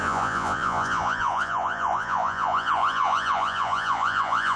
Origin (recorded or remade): remade